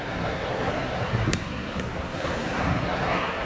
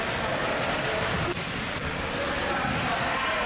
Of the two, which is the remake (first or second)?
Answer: first